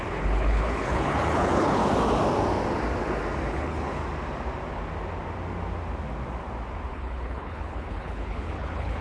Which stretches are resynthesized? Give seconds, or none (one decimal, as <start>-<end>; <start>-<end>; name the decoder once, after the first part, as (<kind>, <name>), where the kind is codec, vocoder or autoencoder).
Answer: 0.0-1.8 (codec, HILCodec); 3.5-4.0; 6.9-9.0